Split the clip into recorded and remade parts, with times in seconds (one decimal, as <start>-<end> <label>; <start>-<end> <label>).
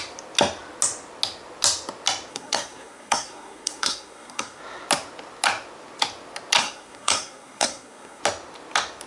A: 0.0-2.3 recorded; 2.3-4.6 remade; 4.6-6.6 recorded; 6.6-8.2 remade; 8.2-9.1 recorded